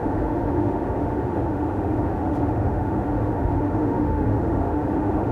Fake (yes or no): yes